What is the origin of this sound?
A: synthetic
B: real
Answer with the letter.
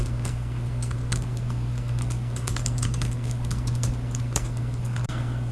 A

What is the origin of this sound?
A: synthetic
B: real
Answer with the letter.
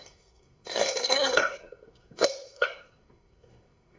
A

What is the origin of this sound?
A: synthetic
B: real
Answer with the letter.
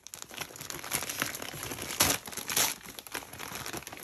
B